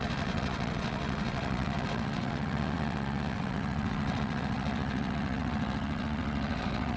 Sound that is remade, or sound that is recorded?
remade